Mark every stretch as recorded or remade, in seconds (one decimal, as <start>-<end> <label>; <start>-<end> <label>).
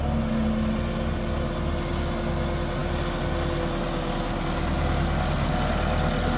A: 0.0-6.4 recorded